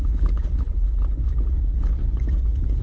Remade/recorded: remade